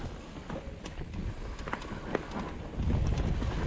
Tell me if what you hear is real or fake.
real